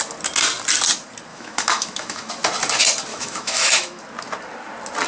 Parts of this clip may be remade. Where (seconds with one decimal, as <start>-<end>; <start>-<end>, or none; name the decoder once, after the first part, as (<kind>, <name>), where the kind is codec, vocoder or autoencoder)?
1.3-2.3 (autoencoder, DAC-VAE); 3.1-4.0